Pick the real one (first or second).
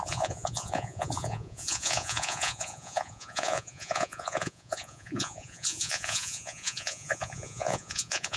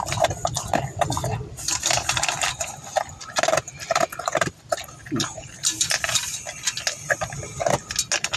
second